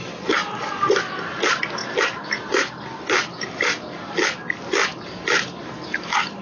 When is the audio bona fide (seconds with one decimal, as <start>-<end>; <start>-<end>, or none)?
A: 0.0-6.4